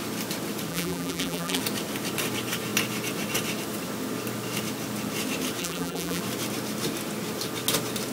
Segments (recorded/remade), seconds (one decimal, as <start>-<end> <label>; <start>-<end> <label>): 0.0-0.7 recorded; 0.7-1.6 remade; 1.6-5.6 recorded; 5.6-6.2 remade; 6.2-8.1 recorded